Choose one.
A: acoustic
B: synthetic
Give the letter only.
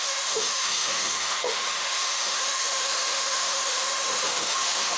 B